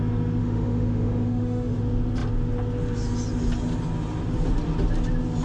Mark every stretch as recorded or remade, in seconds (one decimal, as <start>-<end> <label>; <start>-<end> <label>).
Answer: 0.0-0.4 recorded; 0.4-1.8 remade; 1.8-5.4 recorded